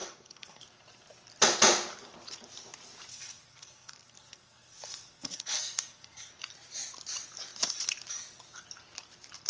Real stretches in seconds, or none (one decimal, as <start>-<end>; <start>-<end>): 0.6-3.1; 6.3-9.5